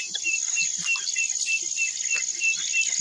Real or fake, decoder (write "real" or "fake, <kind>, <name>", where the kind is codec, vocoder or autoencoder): real